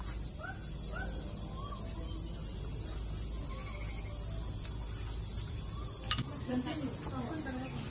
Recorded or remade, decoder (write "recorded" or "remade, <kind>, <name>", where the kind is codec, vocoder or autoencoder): recorded